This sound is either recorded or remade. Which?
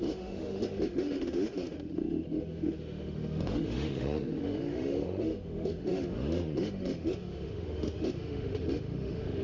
remade